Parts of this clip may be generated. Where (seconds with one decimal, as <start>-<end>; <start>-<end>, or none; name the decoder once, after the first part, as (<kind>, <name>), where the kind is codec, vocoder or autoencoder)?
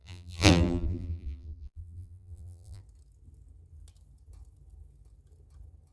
0.0-2.8 (vocoder, BigVGAN v2)